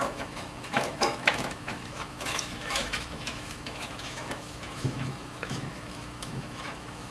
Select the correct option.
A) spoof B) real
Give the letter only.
A